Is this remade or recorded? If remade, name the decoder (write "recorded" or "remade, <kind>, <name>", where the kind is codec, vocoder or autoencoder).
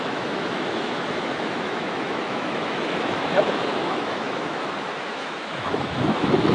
remade, autoencoder, DAC-VAE